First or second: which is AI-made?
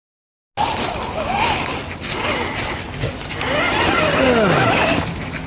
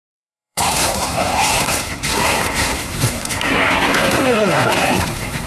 second